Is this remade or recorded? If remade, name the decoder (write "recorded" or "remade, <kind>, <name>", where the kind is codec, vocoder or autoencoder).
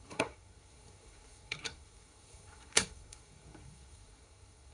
remade, codec, SNAC